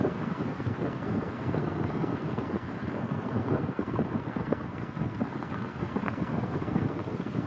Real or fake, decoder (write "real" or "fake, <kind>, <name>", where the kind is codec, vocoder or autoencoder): fake, codec, SNAC